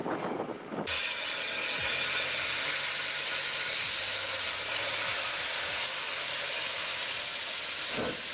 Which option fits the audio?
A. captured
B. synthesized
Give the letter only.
A